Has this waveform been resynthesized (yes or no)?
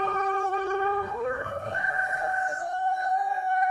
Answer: yes